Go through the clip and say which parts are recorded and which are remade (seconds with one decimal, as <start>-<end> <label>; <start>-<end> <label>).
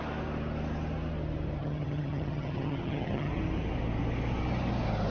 0.0-1.6 recorded; 1.6-3.3 remade; 3.3-5.1 recorded